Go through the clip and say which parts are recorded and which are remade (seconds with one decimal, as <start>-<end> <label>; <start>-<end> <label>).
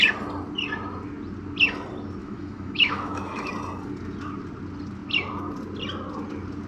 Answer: 0.0-2.2 recorded; 2.2-3.5 remade; 3.5-6.7 recorded